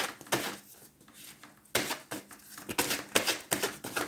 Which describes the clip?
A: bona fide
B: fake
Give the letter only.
A